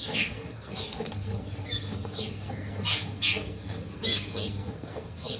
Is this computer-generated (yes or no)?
yes